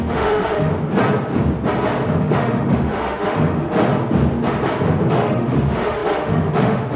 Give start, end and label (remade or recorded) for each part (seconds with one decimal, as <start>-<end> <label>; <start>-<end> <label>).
0.0-0.7 remade; 0.7-2.2 recorded; 2.2-3.9 remade; 3.9-5.1 recorded; 5.1-7.0 remade